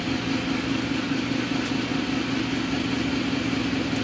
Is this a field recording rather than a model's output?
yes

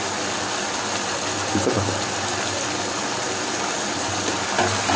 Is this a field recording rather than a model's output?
yes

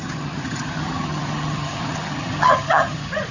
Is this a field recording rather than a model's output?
no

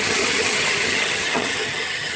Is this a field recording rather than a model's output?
no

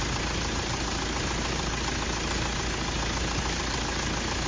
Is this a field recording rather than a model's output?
yes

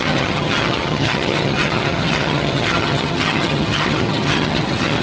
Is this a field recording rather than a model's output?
no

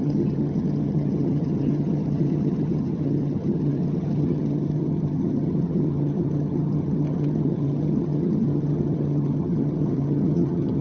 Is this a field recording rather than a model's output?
no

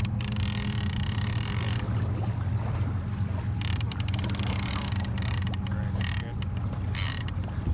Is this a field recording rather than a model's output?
yes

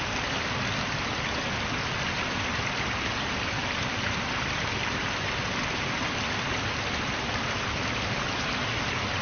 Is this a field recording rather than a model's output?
yes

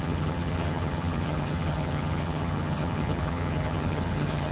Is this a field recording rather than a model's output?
no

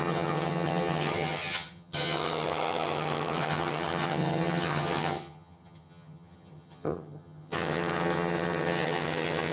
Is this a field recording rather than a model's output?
no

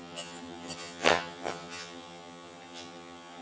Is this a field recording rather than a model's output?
no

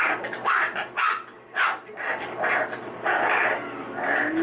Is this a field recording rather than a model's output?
yes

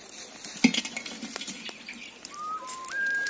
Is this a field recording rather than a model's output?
yes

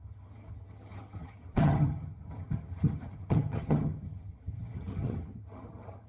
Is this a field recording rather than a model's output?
no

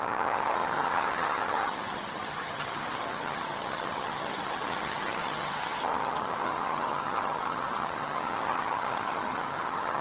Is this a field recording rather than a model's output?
no